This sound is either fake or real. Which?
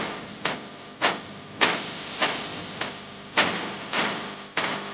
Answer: real